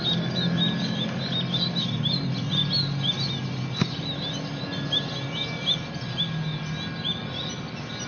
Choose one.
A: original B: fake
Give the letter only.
A